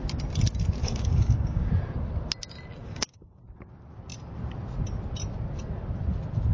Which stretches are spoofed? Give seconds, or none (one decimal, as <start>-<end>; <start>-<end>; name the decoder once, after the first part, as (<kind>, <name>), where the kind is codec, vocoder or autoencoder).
0.8-1.7 (codec, DAC); 2.8-3.4